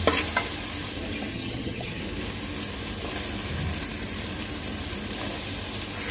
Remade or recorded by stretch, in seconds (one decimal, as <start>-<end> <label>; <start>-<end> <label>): 0.0-1.3 recorded; 1.3-2.0 remade; 2.0-6.1 recorded